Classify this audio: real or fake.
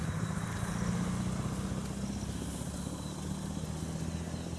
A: real